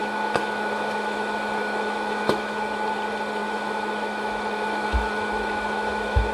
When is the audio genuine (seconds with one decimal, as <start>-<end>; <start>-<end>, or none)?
2.6-3.4